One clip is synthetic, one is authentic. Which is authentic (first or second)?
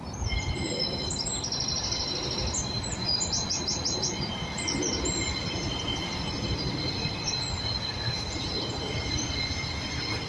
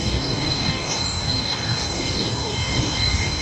first